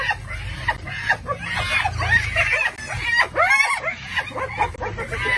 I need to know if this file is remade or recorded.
recorded